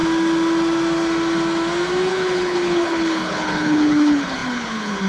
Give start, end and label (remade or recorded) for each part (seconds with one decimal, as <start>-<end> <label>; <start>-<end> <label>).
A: 0.0-2.1 recorded; 2.1-5.1 remade